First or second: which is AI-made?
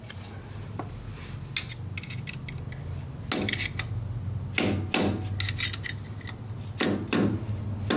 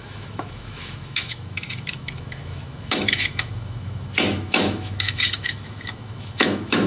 second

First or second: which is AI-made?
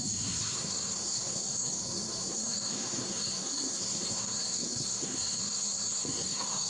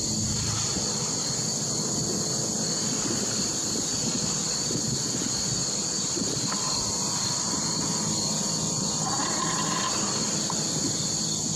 first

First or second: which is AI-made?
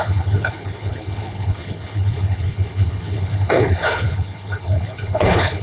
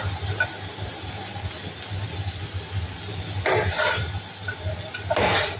first